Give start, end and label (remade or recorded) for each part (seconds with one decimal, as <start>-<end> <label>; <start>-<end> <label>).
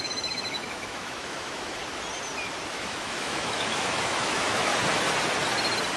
0.0-1.8 remade; 1.8-2.7 recorded; 2.7-4.7 remade; 4.7-6.0 recorded